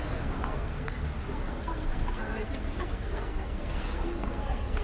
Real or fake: fake